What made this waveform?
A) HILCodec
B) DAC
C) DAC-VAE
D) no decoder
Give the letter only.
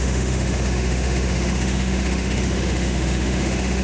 C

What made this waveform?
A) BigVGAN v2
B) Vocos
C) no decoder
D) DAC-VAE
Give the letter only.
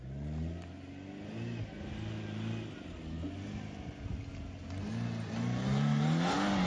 C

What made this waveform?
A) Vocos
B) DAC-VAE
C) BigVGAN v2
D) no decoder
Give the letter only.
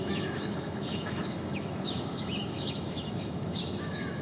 B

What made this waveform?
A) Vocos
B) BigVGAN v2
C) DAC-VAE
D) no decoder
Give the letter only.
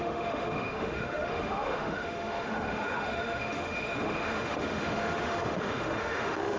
C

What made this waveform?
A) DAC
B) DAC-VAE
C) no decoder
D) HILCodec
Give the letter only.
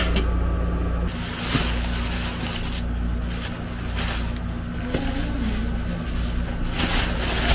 C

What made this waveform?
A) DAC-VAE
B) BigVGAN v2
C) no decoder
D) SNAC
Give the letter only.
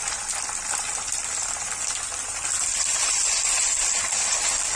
C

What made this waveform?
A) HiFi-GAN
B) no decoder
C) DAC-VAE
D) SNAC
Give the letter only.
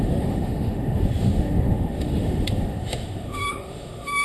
C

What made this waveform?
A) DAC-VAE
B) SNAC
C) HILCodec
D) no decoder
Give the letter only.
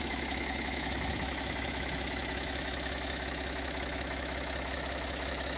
A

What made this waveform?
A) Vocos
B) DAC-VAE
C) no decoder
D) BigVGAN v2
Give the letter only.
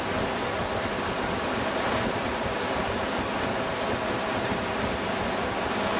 C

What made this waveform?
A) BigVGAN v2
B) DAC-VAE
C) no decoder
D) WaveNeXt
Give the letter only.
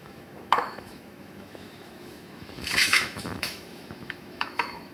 B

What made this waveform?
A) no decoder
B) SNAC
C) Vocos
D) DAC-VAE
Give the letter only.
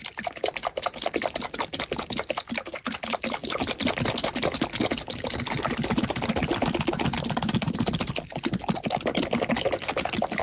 A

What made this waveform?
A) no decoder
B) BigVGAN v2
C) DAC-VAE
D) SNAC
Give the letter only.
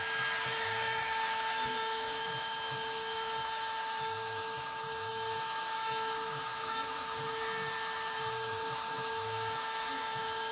C